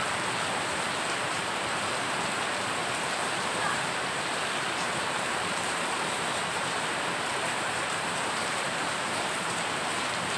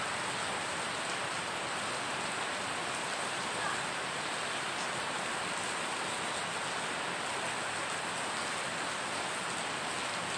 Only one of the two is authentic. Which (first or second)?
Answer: second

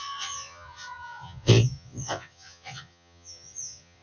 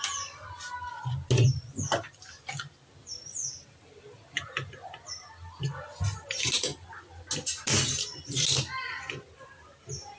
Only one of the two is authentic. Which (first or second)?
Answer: second